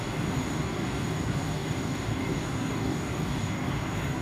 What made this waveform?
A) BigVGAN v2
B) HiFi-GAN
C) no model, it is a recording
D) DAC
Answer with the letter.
D